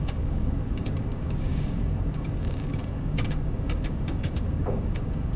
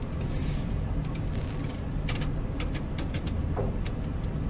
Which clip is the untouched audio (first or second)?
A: second